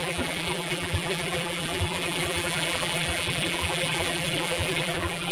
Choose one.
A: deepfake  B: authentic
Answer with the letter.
A